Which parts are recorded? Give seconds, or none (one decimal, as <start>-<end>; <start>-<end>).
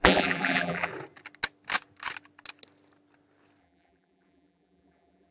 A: 0.9-3.6